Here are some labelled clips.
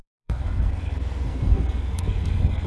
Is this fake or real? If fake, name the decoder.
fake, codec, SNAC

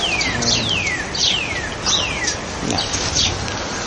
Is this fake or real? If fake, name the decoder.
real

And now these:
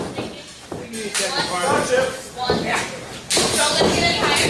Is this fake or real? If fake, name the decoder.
real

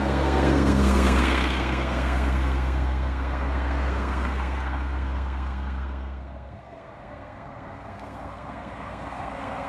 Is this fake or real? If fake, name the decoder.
fake, codec, SNAC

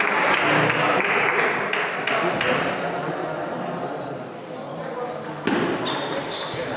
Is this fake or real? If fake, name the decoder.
real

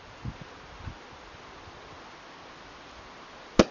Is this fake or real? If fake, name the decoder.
real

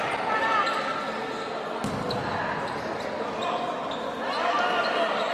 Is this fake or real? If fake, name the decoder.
real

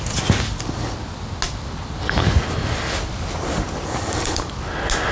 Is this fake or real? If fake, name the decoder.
real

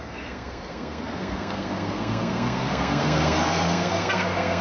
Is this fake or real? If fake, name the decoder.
fake, codec, SNAC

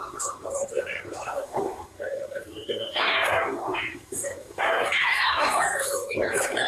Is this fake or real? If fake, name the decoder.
fake, codec, SNAC